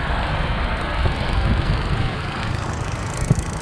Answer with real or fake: fake